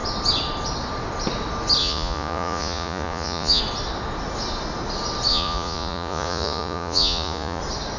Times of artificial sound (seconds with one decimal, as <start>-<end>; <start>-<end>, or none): 1.8-3.6; 5.3-7.6